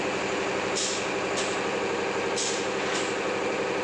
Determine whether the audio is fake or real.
real